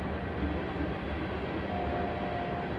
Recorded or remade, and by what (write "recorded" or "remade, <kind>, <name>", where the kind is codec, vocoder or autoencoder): recorded